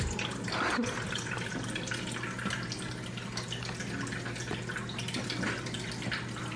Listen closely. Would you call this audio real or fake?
real